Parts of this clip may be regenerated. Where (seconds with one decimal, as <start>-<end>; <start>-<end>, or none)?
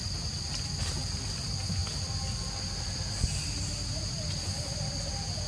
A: none